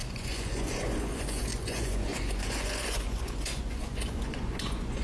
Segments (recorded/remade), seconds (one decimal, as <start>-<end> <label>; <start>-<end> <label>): 0.0-5.0 remade